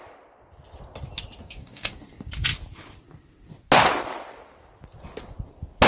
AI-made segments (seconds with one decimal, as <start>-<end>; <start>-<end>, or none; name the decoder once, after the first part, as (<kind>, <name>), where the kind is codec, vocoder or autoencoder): 1.4-1.9 (codec, DAC)